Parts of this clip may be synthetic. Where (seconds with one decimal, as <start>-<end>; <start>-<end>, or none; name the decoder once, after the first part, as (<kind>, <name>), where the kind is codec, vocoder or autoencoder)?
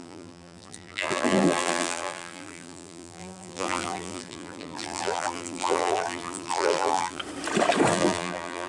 0.0-7.2 (vocoder, BigVGAN v2); 7.9-8.7